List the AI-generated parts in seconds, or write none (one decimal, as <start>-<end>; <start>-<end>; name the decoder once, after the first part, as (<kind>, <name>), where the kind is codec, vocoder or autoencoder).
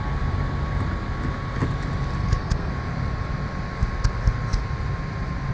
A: 2.2-2.7 (codec, SNAC)